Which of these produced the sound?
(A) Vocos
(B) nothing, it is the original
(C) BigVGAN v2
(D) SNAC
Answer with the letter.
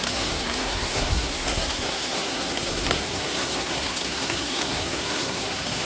D